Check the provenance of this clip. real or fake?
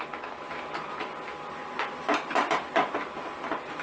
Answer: real